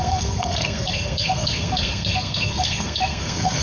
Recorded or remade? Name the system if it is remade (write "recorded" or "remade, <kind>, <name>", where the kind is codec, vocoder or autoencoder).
remade, codec, SNAC